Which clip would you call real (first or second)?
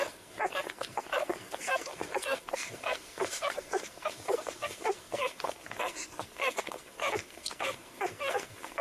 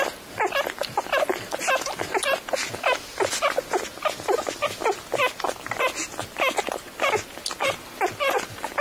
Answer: second